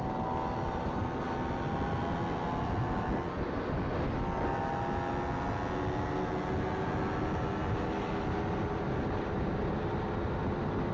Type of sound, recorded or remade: recorded